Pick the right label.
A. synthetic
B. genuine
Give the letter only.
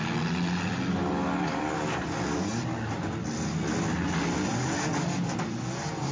B